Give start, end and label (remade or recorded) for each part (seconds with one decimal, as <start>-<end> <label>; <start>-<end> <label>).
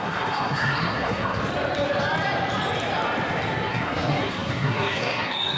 0.0-1.4 remade; 1.4-3.7 recorded; 3.7-5.6 remade